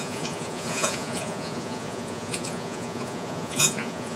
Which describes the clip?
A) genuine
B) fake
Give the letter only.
B